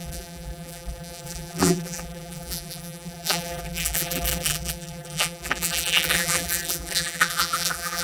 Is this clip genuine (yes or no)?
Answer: no